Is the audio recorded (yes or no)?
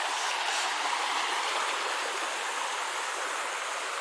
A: yes